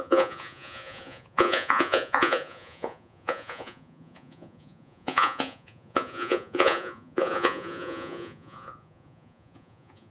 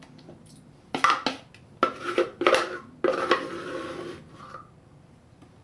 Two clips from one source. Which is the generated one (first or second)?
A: first